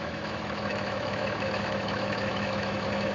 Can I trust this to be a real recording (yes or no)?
no